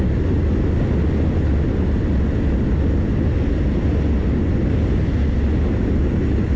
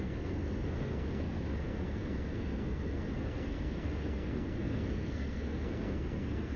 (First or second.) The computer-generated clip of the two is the second